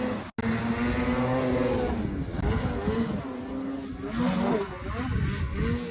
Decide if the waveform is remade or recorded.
recorded